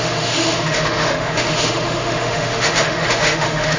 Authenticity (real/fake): fake